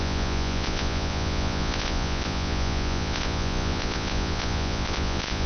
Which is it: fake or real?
fake